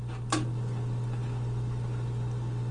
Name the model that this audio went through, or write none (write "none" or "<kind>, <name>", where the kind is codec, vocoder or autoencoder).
none